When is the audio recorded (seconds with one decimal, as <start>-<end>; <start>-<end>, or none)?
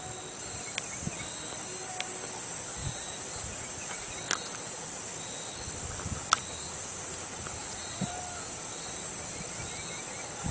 0.0-2.8; 4.2-6.5; 8.1-10.5